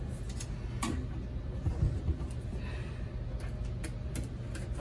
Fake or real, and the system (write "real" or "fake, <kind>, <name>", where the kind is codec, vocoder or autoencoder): real